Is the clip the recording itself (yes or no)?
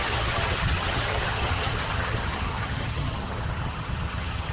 no